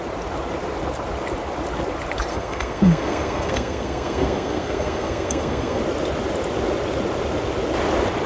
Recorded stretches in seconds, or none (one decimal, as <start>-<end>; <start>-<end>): 0.0-2.3; 5.8-8.3